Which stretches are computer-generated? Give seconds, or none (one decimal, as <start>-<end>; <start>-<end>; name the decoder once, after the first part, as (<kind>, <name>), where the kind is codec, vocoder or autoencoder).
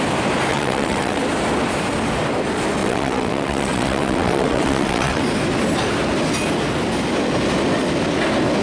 0.5-1.2 (vocoder, WaveNeXt); 2.8-5.2